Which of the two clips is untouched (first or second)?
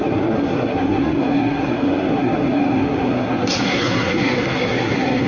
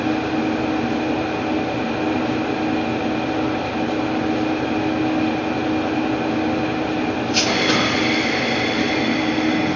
second